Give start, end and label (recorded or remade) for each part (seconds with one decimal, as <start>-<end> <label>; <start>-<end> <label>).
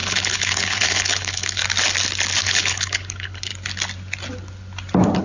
0.0-1.6 remade; 1.6-2.4 recorded; 2.4-3.5 remade; 3.5-5.2 recorded